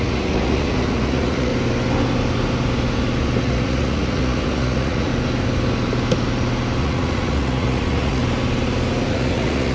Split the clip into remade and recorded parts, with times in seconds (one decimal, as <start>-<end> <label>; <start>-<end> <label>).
0.0-1.5 remade; 1.5-3.4 recorded; 3.4-5.1 remade; 5.1-6.8 recorded; 6.8-8.2 remade; 8.2-9.1 recorded; 9.1-9.7 remade